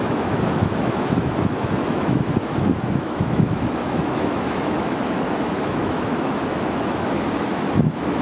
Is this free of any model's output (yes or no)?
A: no